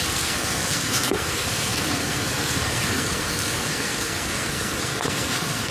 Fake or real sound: fake